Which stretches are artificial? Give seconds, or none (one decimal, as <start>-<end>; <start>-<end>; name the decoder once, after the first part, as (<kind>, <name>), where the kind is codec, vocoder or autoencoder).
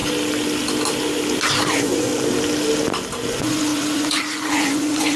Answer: 1.7-2.1 (vocoder, Vocos); 3.3-5.2